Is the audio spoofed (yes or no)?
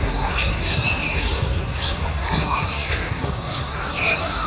yes